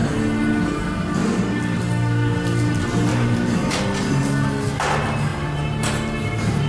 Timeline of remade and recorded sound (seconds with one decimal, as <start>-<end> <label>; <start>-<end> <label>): 0.0-1.8 remade; 1.8-3.1 recorded; 3.1-3.8 remade; 3.8-5.3 recorded; 5.3-6.7 remade